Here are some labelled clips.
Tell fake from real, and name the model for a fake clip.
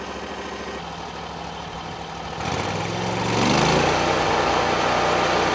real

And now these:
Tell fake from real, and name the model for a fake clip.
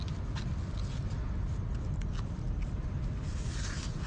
real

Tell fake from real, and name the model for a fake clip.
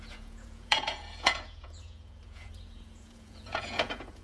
fake, vocoder, Vocos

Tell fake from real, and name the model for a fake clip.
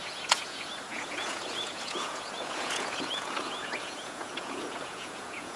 fake, vocoder, Vocos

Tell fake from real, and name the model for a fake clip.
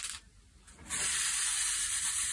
real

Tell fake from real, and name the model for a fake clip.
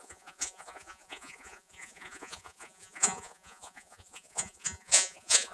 fake, vocoder, Vocos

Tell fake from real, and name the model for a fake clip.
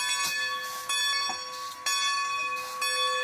real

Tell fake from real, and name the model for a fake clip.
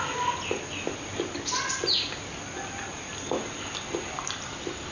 real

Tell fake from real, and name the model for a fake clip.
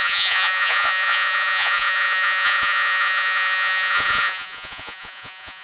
fake, vocoder, Vocos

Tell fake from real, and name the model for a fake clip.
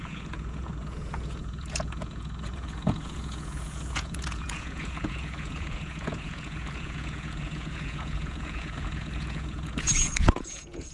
fake, vocoder, Vocos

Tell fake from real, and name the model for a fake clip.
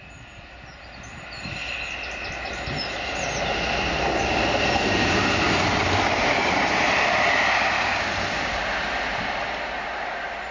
real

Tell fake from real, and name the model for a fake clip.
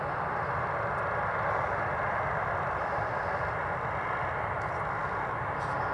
real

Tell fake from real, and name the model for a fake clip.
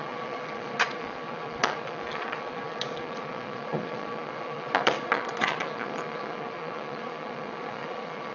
fake, vocoder, Vocos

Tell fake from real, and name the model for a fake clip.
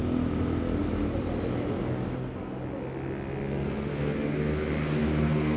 real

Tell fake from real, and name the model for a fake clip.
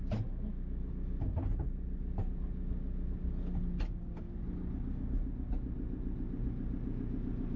real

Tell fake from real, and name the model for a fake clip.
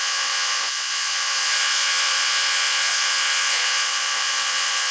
fake, vocoder, Vocos